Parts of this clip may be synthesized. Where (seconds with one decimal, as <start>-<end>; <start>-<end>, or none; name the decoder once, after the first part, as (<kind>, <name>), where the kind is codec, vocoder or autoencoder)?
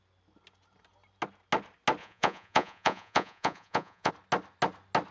2.0-4.1 (vocoder, Vocos)